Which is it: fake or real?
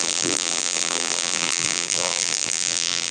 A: fake